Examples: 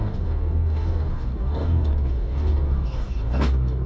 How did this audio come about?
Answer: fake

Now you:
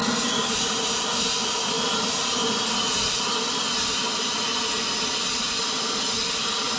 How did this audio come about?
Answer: real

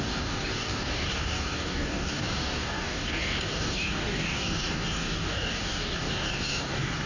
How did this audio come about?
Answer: fake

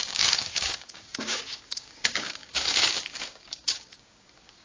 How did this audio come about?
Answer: fake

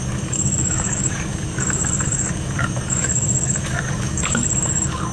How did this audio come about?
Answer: fake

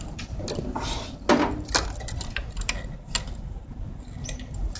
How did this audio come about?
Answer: real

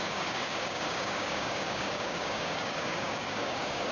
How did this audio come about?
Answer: fake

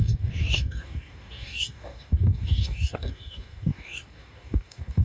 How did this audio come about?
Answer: fake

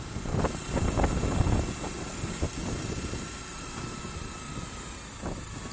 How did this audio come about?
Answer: real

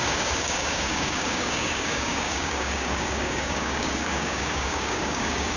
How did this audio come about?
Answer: fake